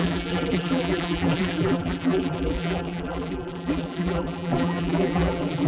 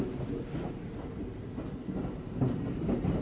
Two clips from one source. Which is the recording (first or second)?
second